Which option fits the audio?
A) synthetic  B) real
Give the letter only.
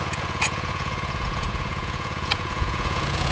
A